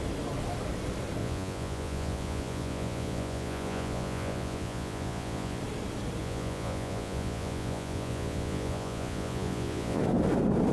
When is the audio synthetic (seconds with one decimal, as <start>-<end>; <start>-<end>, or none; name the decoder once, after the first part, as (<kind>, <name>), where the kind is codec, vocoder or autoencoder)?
1.2-5.6 (vocoder, Vocos); 6.2-10.0